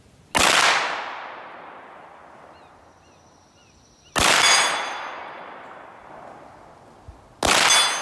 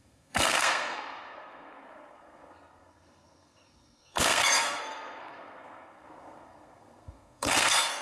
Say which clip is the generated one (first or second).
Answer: second